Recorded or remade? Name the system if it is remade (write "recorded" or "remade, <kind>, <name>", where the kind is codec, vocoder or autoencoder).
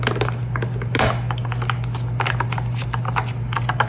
recorded